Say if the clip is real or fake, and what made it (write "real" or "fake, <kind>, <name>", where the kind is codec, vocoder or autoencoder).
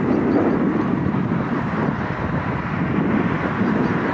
real